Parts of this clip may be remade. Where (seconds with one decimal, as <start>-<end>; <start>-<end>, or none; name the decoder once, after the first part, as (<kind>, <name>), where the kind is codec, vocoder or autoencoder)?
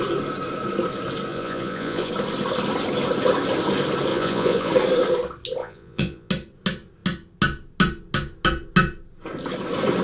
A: 1.3-2.1 (vocoder, Vocos); 4.1-4.7; 5.6-6.3